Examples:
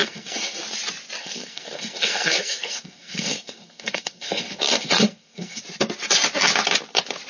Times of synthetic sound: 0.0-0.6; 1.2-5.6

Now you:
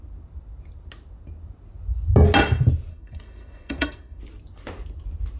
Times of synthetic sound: 2.9-4.2

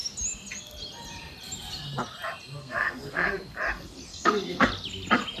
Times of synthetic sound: 2.6-3.3; 4.1-4.7